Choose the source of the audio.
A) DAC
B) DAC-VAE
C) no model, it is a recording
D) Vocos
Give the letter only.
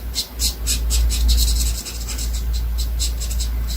C